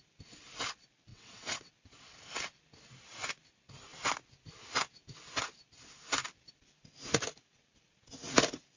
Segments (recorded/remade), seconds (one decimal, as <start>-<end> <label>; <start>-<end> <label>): 0.0-1.1 recorded; 1.1-1.7 remade; 1.7-8.8 recorded